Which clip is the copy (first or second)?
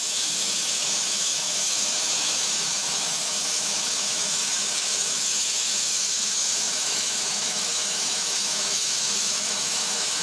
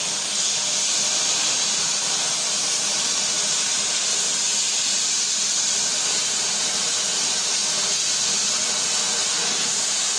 first